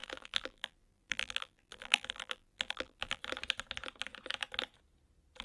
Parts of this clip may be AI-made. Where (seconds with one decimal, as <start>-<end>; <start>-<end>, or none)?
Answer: 0.0-3.2

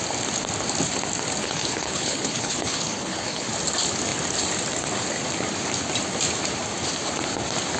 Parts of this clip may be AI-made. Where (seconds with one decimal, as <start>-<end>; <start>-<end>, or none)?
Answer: 1.4-3.5